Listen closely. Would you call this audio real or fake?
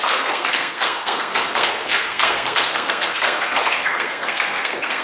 fake